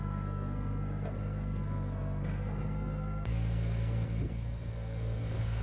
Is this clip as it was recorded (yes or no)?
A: no